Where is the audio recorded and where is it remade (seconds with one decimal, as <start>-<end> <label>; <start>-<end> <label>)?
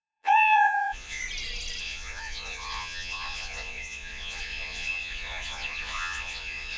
0.0-1.2 remade; 1.2-1.8 recorded; 1.8-6.8 remade